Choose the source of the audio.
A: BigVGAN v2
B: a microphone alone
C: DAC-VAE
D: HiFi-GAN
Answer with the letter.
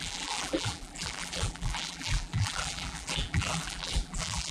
A